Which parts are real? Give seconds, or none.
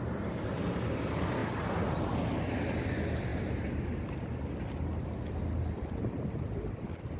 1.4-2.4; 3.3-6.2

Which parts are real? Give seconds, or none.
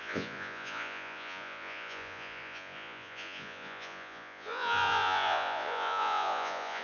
none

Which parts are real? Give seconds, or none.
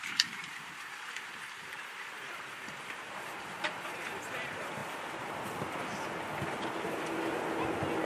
4.8-8.1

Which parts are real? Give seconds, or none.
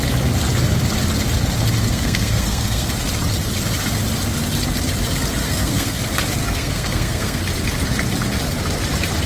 0.0-1.8; 2.9-5.4; 6.0-6.4; 7.4-9.3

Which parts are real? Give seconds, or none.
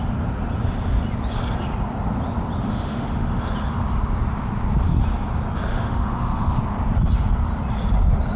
0.0-2.7; 3.4-5.7; 6.6-8.4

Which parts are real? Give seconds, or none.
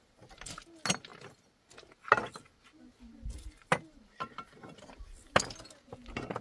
0.0-6.4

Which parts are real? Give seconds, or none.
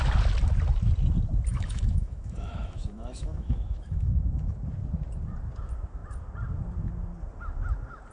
0.0-1.5; 4.6-8.1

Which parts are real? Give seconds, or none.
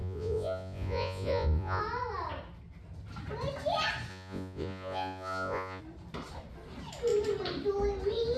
1.8-4.1; 5.8-8.4